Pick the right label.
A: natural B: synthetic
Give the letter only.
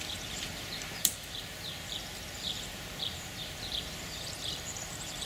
B